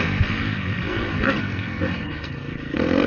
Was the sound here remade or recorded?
remade